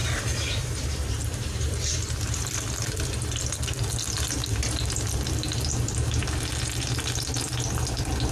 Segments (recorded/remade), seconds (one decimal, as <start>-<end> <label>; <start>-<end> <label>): 0.0-2.4 remade; 2.4-8.3 recorded